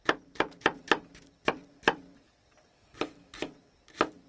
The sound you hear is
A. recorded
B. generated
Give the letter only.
A